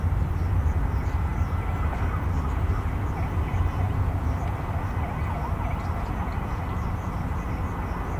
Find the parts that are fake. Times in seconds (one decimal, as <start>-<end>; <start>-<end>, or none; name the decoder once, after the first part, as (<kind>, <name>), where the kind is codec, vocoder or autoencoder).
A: none